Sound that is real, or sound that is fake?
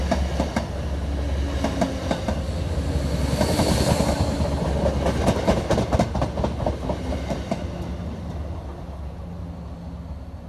real